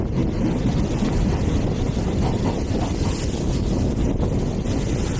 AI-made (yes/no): no